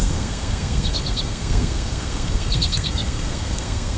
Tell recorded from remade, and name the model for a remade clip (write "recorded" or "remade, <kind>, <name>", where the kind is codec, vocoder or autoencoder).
remade, codec, SNAC